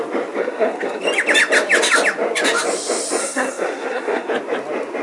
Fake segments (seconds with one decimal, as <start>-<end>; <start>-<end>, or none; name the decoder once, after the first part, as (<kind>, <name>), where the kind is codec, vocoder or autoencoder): 0.4-1.0 (codec, SNAC); 3.2-4.3